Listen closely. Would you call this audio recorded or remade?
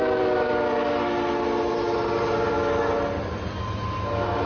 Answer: recorded